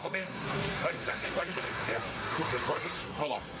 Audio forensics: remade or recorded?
remade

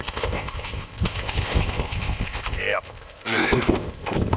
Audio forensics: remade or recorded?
remade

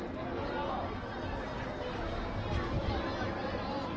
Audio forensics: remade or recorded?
recorded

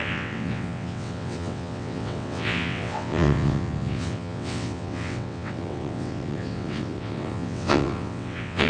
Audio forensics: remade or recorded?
remade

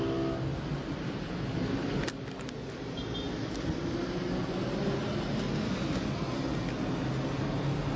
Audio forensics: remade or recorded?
recorded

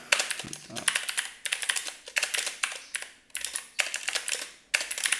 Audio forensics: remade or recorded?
recorded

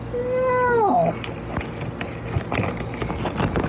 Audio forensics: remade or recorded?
recorded